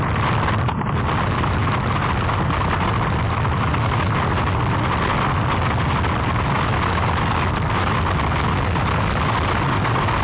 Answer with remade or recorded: remade